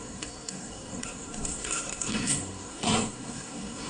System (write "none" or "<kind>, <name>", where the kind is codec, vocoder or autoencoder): codec, SNAC